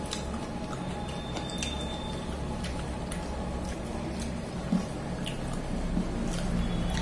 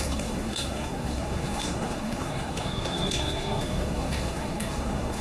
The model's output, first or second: second